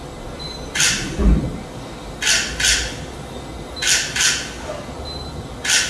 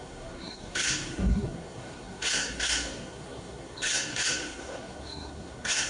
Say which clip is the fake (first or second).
second